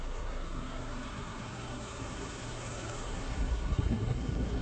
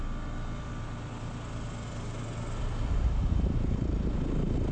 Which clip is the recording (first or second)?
second